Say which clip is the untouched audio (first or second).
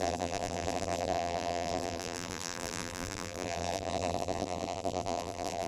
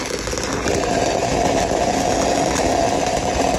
second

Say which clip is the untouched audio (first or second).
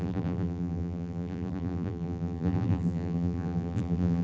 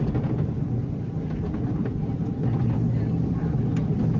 second